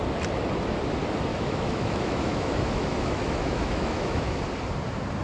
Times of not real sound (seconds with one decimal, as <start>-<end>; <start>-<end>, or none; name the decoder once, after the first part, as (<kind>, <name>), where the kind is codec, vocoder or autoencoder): 1.3-4.4 (autoencoder, DAC-VAE)